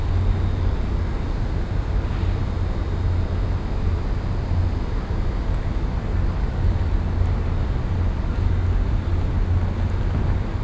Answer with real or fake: real